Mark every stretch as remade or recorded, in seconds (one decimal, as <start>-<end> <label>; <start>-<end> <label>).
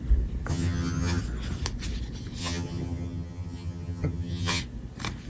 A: 0.0-0.5 recorded; 0.5-1.2 remade; 1.2-2.4 recorded; 2.4-4.6 remade; 4.6-5.3 recorded